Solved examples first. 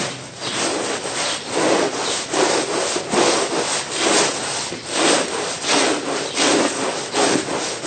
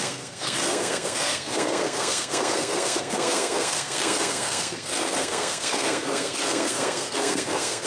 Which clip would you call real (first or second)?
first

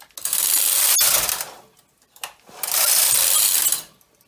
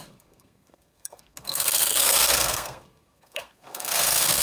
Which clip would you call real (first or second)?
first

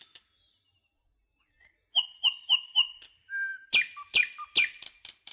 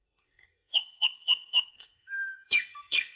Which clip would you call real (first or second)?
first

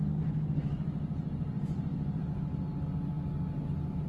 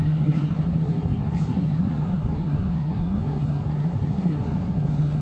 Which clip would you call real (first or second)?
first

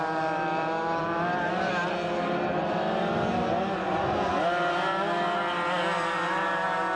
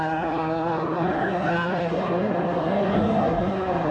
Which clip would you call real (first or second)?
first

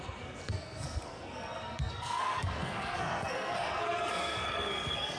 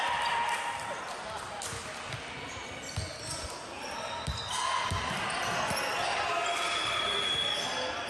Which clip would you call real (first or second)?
second